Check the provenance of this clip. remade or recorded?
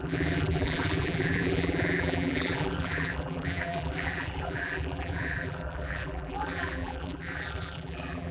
remade